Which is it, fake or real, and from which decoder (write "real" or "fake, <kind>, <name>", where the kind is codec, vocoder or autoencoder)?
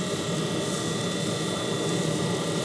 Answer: real